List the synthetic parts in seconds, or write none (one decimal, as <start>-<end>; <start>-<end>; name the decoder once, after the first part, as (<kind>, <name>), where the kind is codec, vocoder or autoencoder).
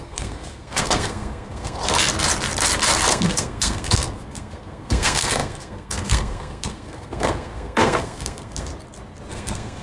0.0-1.8 (codec, SNAC); 3.1-8.7; 9.3-9.8